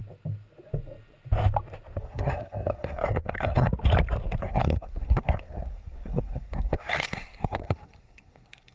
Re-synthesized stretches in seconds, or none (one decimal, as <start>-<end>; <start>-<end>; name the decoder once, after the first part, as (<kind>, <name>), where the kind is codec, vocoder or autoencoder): 2.0-3.7 (codec, SNAC); 4.4-8.7